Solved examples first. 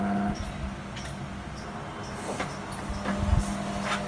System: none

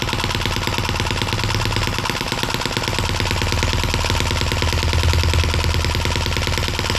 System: none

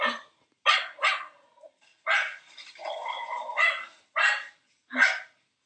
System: none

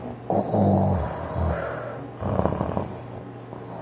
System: none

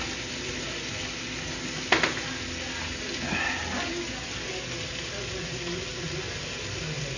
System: none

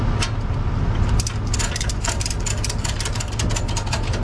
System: none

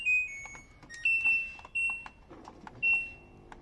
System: none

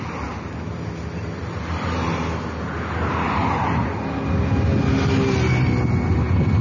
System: none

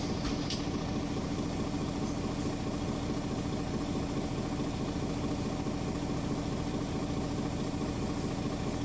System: none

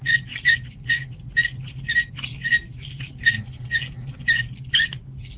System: none